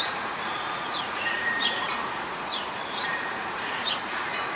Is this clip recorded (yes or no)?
no